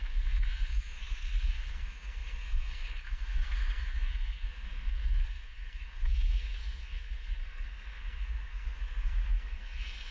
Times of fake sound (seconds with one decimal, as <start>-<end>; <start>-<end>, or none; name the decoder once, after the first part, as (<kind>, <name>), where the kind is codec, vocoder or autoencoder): 0.0-10.1 (codec, SNAC)